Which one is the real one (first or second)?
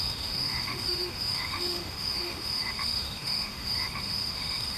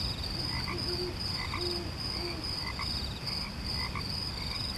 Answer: second